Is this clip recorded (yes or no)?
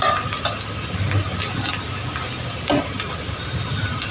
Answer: yes